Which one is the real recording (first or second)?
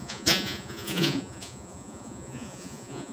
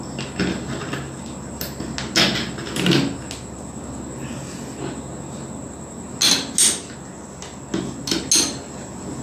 second